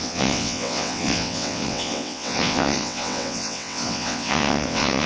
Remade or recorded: remade